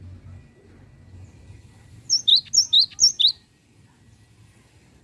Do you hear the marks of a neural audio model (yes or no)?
no